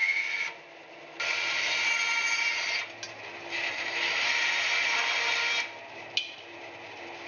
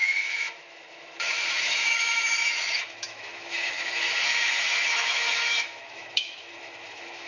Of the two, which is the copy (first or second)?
second